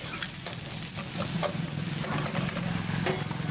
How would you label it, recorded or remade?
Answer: recorded